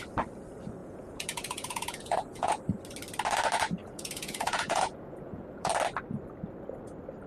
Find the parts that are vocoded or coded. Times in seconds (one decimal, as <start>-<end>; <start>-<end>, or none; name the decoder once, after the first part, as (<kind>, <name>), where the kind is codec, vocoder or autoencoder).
0.8-2.6 (vocoder, Vocos); 3.8-5.7